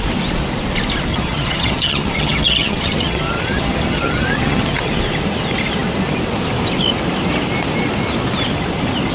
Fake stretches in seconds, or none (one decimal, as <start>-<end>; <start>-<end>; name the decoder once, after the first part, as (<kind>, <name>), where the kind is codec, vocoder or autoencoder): 1.1-5.0 (vocoder, HiFi-GAN)